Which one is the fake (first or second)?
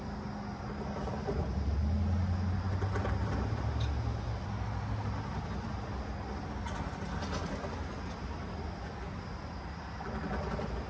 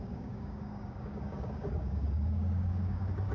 second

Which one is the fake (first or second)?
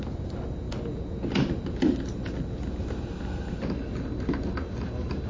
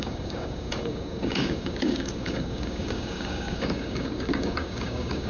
second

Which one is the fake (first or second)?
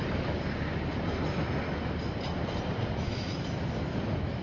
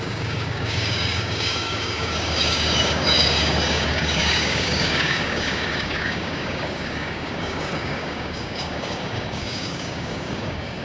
second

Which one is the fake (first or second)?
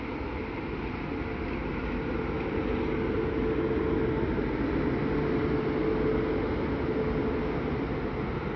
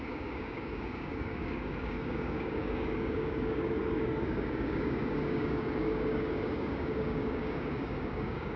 second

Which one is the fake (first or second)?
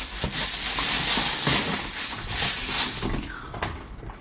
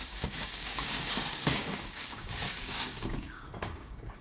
second